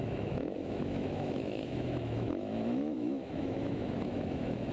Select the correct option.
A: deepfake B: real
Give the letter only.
A